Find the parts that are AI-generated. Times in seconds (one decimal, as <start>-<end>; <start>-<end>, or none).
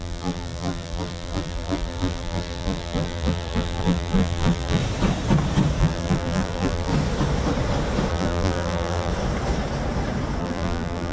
0.0-4.8; 5.8-6.9; 8.1-9.1; 10.4-11.1